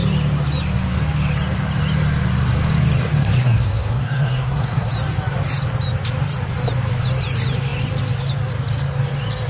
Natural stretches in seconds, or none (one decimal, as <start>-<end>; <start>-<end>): 0.0-3.4; 4.9-9.5